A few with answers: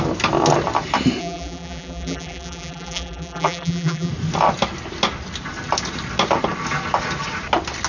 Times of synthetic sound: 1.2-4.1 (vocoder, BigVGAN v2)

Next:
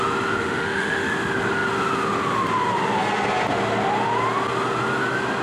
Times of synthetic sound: 0.4-1.1 (autoencoder, DAC-VAE)